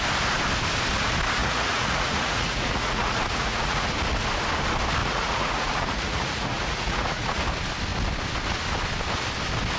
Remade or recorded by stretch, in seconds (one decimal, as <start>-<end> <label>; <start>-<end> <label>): 0.0-1.4 recorded; 1.4-3.9 remade; 3.9-5.0 recorded; 5.0-7.4 remade; 7.4-9.8 recorded